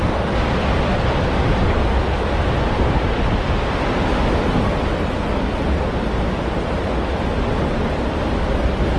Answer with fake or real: real